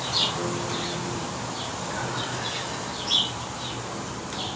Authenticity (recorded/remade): recorded